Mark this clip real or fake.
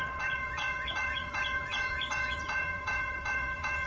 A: fake